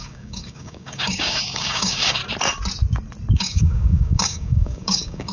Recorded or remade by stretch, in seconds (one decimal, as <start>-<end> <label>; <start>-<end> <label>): 0.0-2.2 remade; 2.2-3.3 recorded; 3.3-5.3 remade